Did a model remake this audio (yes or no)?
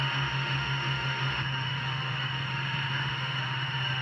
yes